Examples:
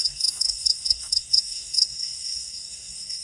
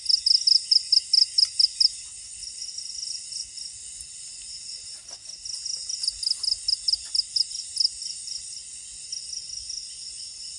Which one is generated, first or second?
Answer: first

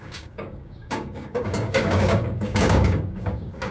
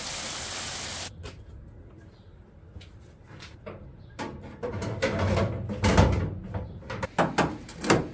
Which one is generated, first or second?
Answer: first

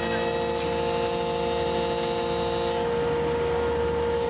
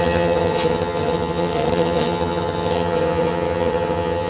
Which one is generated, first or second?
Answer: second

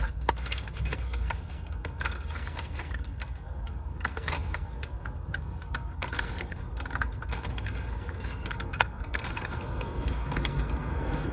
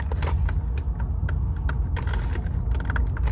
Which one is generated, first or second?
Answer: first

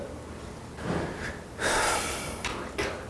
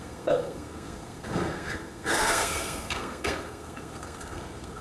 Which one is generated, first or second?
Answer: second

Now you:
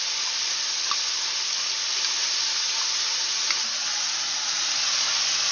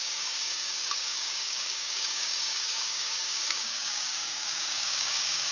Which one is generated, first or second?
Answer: second